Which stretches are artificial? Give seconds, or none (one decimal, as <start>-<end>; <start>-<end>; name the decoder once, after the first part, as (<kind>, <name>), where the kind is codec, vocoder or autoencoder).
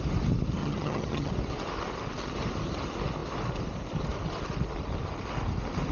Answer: 0.6-1.3 (vocoder, HiFi-GAN)